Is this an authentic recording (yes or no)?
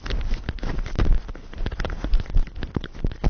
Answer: yes